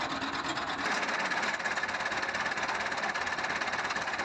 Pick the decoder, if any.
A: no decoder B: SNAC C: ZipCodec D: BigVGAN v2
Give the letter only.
A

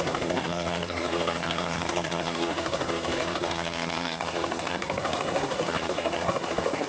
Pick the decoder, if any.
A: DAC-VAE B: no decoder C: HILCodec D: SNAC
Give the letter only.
D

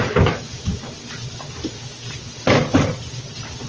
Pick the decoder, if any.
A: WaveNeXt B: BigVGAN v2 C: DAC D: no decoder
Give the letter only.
D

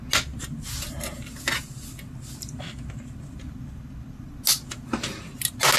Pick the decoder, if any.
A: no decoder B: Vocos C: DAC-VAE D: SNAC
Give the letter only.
A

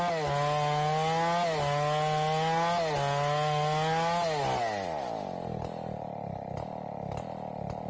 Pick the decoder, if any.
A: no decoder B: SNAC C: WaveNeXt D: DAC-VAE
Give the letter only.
A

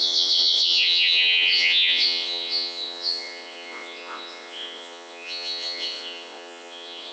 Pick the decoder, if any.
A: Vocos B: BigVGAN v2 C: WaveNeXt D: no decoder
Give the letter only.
C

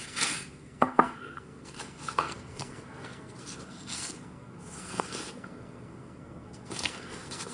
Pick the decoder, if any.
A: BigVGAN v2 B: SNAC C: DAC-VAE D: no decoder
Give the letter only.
B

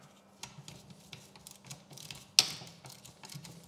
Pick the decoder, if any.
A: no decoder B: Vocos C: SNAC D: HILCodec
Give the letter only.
A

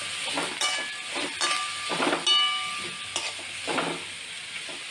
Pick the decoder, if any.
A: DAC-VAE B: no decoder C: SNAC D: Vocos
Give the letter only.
B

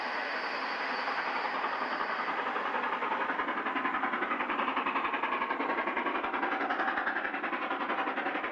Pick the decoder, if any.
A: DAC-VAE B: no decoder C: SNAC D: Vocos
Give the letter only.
B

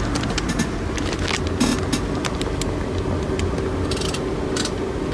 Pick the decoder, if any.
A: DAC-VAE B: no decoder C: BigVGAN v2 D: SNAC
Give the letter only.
B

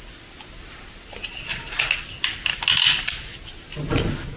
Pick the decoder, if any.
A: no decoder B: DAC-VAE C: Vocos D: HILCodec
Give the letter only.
A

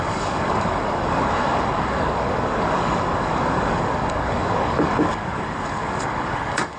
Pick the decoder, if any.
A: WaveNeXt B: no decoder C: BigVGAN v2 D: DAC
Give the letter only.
D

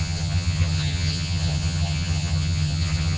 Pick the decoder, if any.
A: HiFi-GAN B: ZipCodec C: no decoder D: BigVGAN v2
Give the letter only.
A